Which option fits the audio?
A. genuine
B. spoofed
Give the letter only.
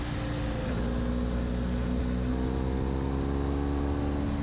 A